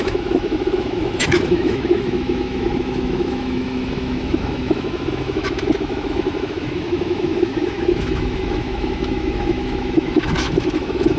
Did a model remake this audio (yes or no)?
yes